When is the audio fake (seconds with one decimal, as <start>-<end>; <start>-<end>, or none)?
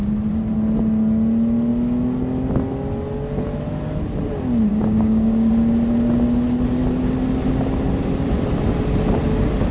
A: 4.7-5.5